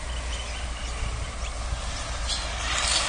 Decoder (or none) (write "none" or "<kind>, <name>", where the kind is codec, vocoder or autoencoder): none